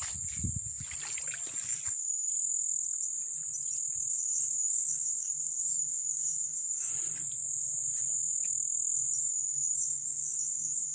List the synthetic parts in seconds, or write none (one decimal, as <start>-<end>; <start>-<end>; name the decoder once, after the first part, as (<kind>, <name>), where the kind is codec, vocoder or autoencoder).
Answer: 1.9-2.3 (codec, DAC); 4.1-6.9; 9.2-10.9